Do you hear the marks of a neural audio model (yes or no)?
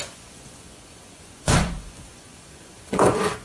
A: yes